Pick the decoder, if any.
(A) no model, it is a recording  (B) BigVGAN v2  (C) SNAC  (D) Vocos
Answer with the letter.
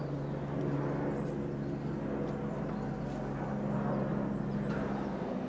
A